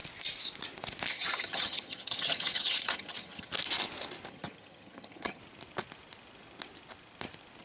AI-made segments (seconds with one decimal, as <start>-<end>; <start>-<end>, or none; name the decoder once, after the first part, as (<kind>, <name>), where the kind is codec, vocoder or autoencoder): 1.1-3.5 (vocoder, HiFi-GAN); 4.3-5.4